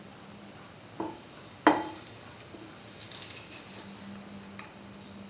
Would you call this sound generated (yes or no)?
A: no